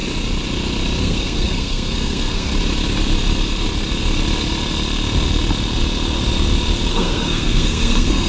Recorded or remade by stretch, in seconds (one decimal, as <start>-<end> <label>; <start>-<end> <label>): 0.0-1.0 recorded; 1.0-2.5 remade; 2.5-6.9 recorded; 6.9-8.3 remade